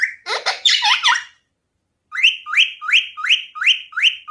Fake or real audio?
fake